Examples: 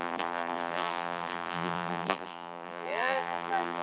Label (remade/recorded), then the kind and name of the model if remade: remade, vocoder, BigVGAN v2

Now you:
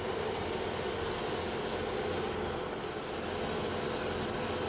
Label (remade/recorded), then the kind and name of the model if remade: recorded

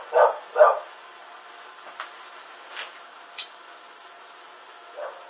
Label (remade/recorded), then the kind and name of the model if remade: recorded